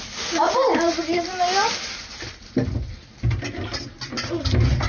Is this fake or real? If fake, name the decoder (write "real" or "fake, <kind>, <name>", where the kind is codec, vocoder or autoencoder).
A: real